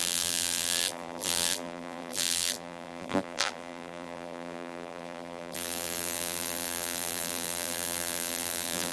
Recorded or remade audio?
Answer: remade